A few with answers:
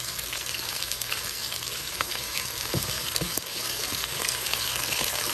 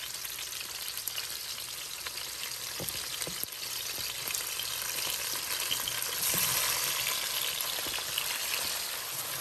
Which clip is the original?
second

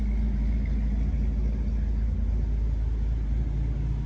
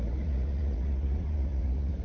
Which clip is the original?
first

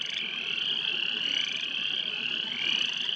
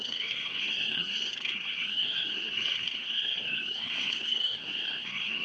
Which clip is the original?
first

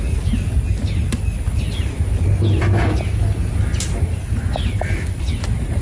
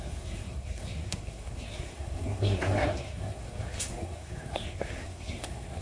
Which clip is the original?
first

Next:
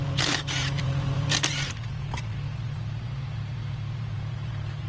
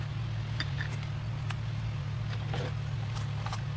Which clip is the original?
second